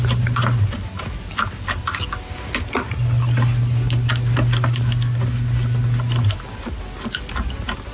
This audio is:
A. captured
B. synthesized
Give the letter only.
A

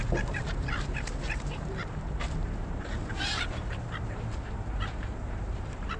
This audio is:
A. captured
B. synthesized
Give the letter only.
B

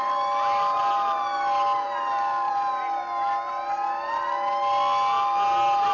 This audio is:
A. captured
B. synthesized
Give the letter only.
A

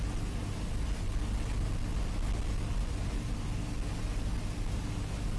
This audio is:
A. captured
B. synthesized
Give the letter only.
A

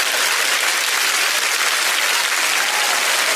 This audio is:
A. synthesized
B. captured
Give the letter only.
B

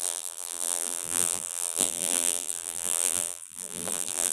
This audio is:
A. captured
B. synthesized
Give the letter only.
B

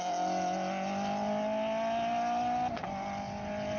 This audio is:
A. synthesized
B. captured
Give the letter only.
B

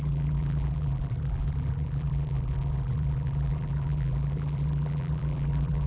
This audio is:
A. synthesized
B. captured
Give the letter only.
A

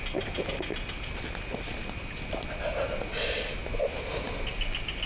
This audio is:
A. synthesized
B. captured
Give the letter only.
B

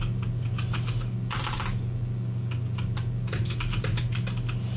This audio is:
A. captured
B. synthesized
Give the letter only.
A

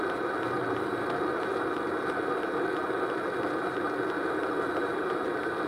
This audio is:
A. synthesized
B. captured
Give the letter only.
B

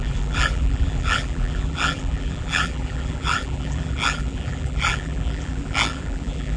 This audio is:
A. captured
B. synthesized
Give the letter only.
B